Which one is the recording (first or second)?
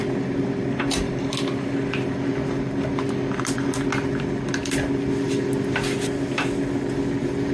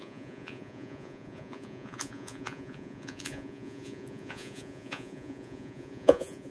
first